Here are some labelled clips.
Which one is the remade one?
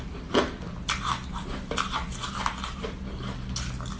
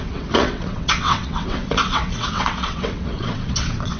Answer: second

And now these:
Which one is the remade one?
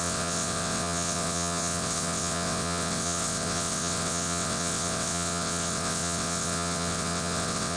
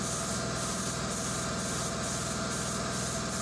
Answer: first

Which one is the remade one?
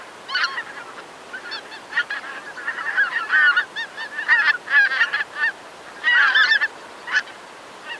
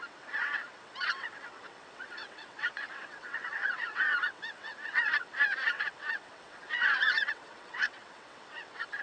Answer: second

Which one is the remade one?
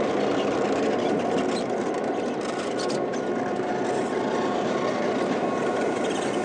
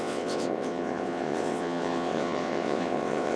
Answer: second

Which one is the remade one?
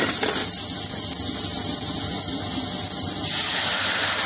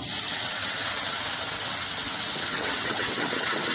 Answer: second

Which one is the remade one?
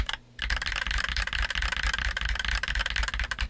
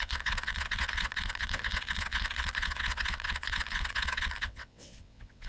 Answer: second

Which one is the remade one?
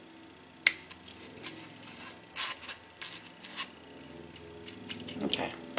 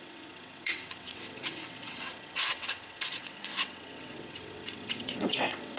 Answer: second